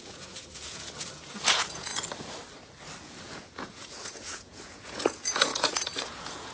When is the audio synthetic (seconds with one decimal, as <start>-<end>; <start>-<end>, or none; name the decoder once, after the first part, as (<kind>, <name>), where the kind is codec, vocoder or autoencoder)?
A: 0.0-1.9 (vocoder, Vocos); 3.0-6.5